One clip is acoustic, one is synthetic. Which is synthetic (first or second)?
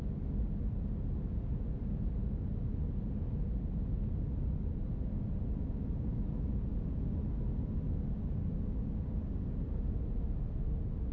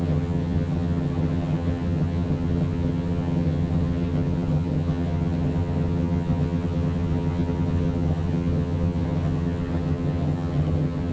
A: second